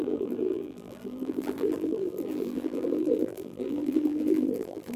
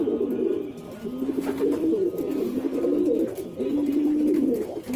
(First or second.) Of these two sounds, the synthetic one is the first